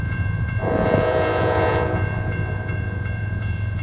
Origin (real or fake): fake